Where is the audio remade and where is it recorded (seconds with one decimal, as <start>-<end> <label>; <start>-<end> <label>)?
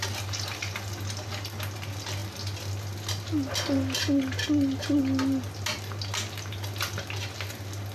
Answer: 0.0-7.9 recorded